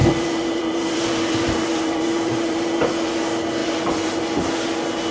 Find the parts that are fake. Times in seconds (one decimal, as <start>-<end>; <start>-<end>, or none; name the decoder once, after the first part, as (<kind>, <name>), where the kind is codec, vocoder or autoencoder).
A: 0.0-3.1 (vocoder, BigVGAN v2); 3.6-4.2